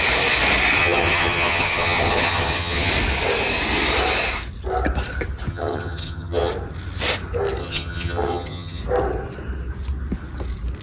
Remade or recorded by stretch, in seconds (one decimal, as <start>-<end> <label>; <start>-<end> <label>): 0.0-0.8 recorded; 0.8-2.9 remade; 2.9-5.5 recorded; 5.5-6.5 remade; 6.5-7.6 recorded; 7.6-8.8 remade; 8.8-10.8 recorded